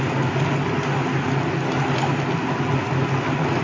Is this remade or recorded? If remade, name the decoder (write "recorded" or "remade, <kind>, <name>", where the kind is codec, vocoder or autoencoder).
recorded